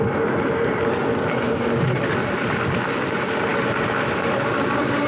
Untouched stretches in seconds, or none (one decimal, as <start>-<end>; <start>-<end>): 0.0-5.1